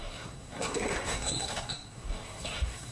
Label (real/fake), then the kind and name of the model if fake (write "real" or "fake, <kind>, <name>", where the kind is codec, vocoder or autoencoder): fake, codec, SNAC